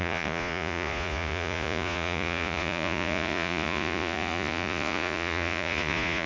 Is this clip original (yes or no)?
no